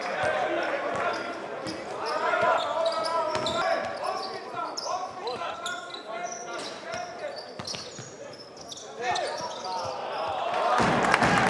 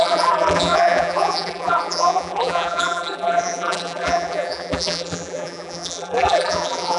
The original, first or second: first